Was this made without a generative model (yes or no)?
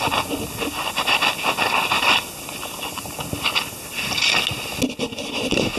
yes